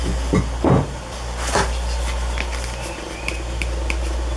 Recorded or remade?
recorded